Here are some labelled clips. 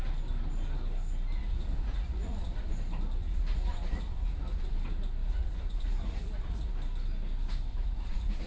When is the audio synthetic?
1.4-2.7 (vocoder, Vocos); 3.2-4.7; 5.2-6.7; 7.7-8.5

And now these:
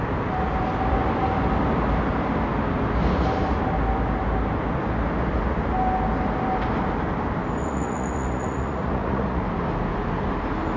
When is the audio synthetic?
7.6-9.4 (vocoder, Vocos)

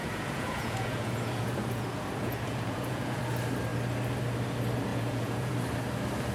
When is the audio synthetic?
0.0-3.2 (vocoder, Vocos); 4.9-5.5

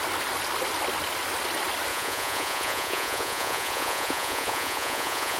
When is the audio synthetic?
1.9-5.4 (vocoder, Vocos)

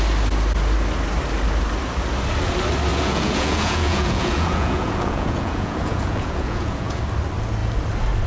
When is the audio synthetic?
2.9-7.0 (vocoder, Vocos)

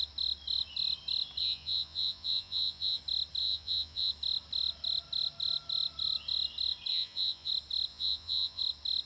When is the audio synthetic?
1.4-3.0 (vocoder, Vocos); 3.4-4.1; 6.9-7.5; 7.9-8.6

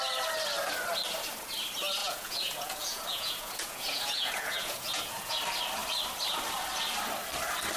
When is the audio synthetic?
2.0-5.3 (vocoder, Vocos)